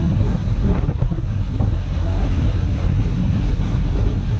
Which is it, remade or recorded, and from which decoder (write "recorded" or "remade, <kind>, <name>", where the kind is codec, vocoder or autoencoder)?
remade, codec, SNAC